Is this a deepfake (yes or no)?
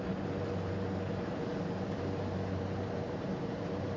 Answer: yes